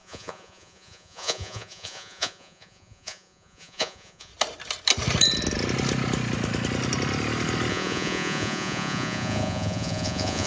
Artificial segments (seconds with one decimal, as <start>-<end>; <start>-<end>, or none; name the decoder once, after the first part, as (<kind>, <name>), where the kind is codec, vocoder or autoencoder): 0.0-4.3 (vocoder, Vocos); 7.7-10.5